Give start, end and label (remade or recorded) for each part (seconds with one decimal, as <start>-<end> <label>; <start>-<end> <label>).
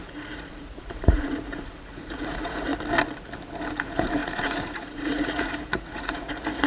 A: 0.0-2.7 remade; 2.7-3.6 recorded; 3.6-6.7 remade